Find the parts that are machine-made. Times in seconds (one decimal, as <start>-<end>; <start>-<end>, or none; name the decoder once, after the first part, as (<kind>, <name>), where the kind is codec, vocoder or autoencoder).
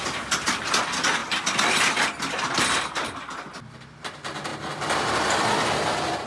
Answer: none